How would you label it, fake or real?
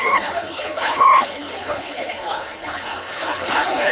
fake